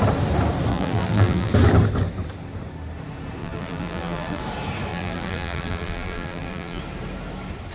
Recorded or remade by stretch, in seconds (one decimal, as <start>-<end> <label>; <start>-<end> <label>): 0.0-0.7 recorded; 0.7-1.5 remade; 1.5-3.4 recorded; 3.4-4.4 remade; 4.4-4.9 recorded; 4.9-6.8 remade; 6.8-7.7 recorded